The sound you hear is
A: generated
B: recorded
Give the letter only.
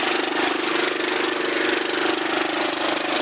B